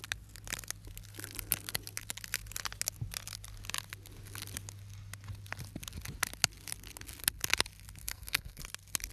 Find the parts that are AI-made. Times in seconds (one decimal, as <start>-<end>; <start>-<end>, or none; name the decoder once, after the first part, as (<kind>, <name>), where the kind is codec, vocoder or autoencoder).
8.0-8.6 (codec, SNAC)

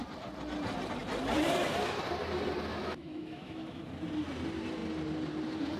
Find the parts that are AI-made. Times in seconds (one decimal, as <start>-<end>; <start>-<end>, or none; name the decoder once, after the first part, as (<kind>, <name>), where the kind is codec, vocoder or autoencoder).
2.7-3.8 (autoencoder, DAC-VAE)

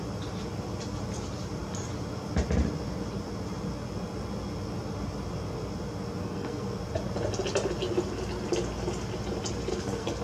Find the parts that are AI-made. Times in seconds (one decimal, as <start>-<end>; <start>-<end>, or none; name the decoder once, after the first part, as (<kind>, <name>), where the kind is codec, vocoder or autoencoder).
6.2-6.8 (codec, SNAC); 9.7-10.2

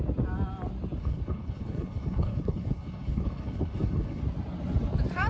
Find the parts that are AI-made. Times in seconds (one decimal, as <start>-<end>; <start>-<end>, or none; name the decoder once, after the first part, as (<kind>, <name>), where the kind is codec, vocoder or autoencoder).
1.0-4.2 (codec, HILCodec)

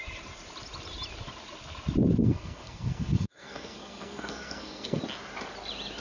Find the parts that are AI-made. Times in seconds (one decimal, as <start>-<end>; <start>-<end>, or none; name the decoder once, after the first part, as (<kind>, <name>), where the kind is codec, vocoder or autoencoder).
2.2-5.0 (codec, SNAC)

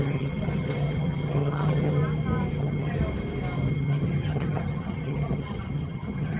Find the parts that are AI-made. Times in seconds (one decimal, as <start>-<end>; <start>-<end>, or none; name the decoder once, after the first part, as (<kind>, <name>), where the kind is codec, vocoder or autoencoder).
0.0-2.0 (vocoder, HiFi-GAN); 2.6-3.0; 3.7-6.4

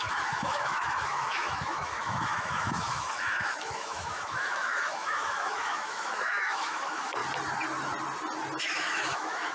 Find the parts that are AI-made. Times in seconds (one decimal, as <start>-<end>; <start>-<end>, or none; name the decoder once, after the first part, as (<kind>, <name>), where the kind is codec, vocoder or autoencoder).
0.0-7.2 (autoencoder, DAC-VAE); 8.6-9.5